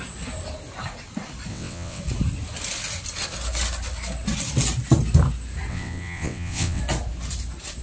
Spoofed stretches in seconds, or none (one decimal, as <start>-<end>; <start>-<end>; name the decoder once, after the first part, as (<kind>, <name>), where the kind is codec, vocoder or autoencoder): 1.5-2.0 (vocoder, WaveNeXt); 5.7-6.8

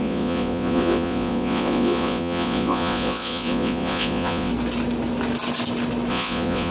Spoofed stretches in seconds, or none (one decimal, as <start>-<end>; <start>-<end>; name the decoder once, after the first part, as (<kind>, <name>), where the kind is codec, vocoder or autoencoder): 0.0-4.5 (vocoder, Vocos); 6.1-6.7